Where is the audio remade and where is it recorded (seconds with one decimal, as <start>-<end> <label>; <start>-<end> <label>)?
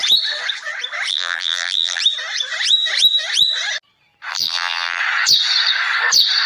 0.0-1.1 recorded; 1.1-2.0 remade; 2.0-4.3 recorded; 4.3-5.0 remade; 5.0-6.5 recorded